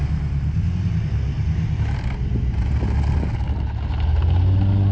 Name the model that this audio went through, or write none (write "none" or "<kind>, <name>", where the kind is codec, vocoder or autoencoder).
none